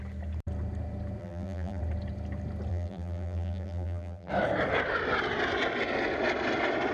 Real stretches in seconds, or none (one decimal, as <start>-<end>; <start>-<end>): 0.0-1.2; 1.8-2.7; 4.3-6.9